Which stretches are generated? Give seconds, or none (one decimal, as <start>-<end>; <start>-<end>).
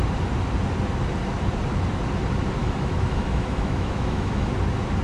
2.6-4.5